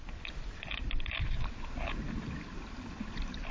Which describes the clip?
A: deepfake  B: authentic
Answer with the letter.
B